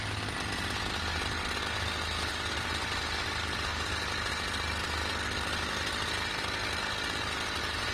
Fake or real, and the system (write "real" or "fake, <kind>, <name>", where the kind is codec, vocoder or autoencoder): real